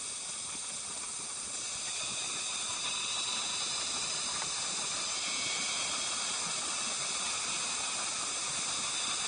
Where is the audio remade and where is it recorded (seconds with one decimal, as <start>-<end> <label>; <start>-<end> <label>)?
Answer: 0.0-9.3 recorded